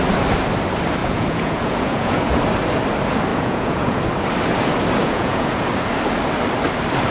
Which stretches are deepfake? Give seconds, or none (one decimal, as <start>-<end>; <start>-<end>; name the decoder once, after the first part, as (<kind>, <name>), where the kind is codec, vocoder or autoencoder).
1.0-2.4 (vocoder, Vocos); 3.3-4.0; 5.0-5.7